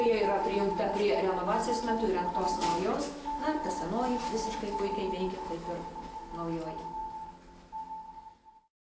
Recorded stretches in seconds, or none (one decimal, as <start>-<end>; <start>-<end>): 0.0-2.7; 3.4-8.9